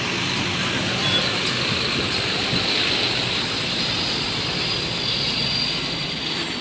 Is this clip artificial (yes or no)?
no